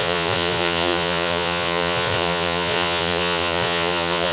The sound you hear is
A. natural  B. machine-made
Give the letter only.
B